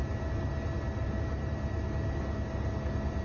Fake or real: real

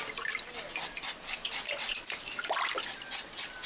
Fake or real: real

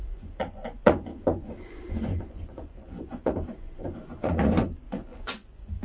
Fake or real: fake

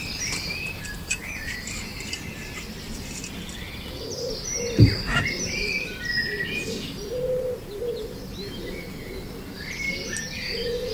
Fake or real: fake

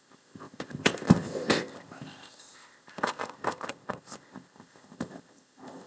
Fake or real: fake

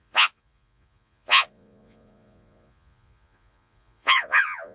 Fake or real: fake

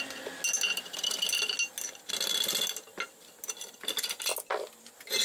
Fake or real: real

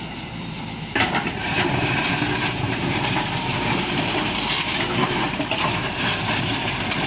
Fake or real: fake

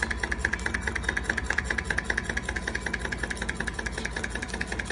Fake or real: real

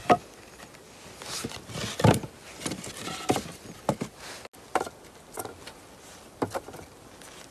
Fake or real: real